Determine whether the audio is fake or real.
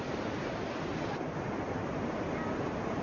real